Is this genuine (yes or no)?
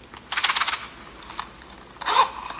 yes